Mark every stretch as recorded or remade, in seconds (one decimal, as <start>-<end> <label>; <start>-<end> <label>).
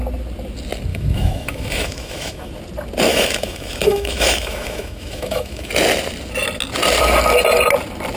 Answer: 0.0-0.9 recorded; 0.9-2.5 remade; 2.5-3.1 recorded; 3.1-5.7 remade; 5.7-8.2 recorded